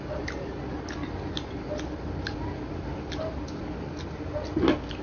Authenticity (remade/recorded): recorded